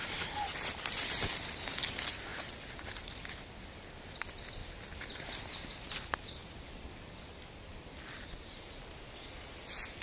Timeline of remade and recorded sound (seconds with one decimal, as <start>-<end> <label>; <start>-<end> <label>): 0.0-10.0 remade